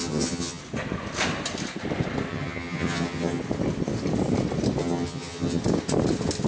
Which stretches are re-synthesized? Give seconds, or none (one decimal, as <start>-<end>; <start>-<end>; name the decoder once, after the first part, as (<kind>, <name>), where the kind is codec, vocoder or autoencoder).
0.0-0.6 (vocoder, HiFi-GAN); 2.3-3.4; 4.8-5.6